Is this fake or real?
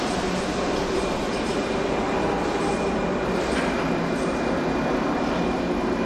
real